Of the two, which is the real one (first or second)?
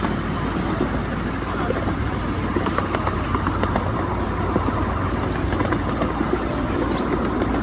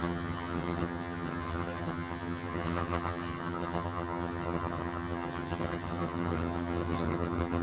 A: first